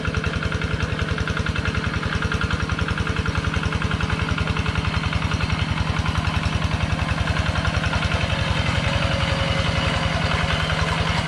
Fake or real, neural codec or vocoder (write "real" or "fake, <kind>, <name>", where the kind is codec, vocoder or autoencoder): real